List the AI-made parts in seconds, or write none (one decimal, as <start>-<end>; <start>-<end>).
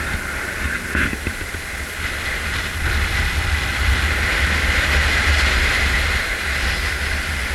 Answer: 1.1-1.6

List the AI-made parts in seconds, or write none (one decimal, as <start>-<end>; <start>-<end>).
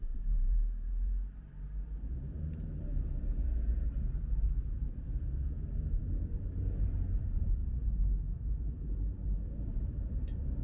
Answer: 0.0-7.6; 8.5-10.6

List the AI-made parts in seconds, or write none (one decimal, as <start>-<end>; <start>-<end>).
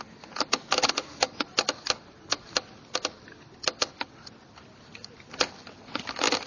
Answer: 1.5-4.5